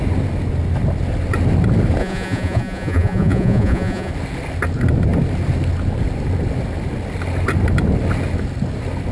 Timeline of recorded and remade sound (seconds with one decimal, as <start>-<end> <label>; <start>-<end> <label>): 0.0-2.0 recorded; 2.0-4.1 remade; 4.1-9.1 recorded